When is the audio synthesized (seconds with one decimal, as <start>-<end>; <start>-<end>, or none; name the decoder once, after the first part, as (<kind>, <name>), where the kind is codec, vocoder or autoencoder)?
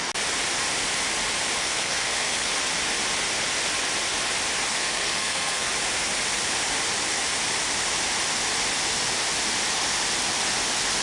1.6-2.5 (codec, SNAC); 4.7-5.7